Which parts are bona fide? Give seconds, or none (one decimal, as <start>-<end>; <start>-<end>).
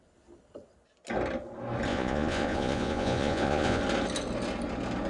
0.0-1.9; 3.8-5.1